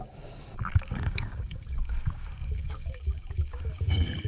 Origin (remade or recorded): remade